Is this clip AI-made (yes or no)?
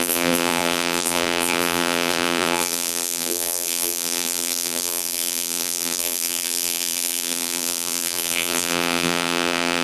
yes